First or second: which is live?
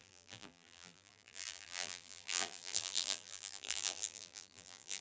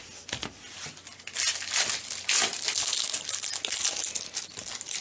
second